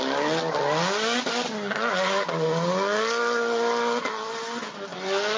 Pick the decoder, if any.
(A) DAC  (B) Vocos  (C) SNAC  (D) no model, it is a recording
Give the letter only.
D